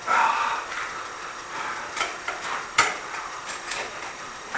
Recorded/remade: remade